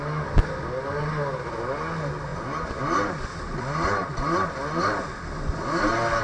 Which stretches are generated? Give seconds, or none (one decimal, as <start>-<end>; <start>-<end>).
none